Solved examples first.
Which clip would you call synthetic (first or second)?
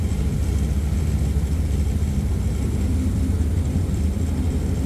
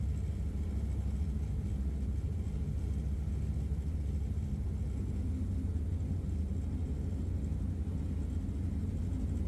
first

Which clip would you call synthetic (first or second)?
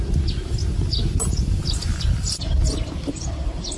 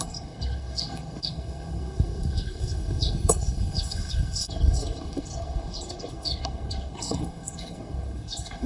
second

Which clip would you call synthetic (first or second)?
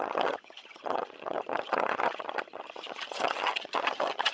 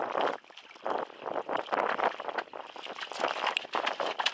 first